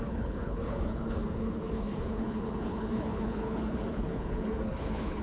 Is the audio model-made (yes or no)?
yes